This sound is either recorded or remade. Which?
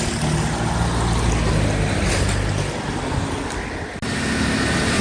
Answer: recorded